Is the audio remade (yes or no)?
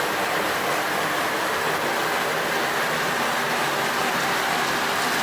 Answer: no